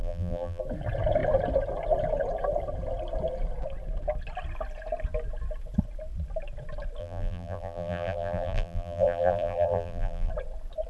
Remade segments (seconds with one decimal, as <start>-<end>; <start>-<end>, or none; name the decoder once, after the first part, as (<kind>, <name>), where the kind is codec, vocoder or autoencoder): 0.0-0.6 (vocoder, BigVGAN v2); 7.0-10.3